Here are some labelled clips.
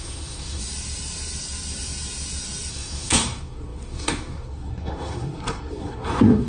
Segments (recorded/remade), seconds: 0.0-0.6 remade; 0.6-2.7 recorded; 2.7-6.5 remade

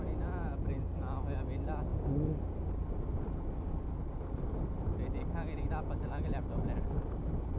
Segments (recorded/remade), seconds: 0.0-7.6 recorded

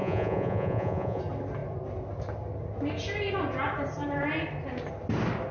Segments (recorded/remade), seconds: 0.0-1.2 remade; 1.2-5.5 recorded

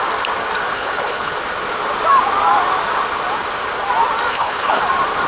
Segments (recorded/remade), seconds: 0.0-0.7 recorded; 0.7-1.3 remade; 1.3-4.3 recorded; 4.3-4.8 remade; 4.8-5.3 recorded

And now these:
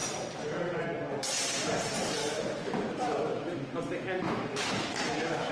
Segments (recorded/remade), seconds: 0.0-2.2 recorded; 2.2-5.5 remade

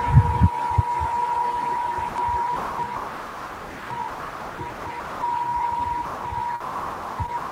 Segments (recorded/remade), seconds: 0.0-0.9 recorded; 0.9-4.6 remade; 4.6-5.5 recorded; 5.5-6.2 remade; 6.2-7.5 recorded